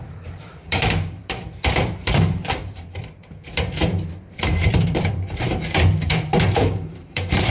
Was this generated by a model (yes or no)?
yes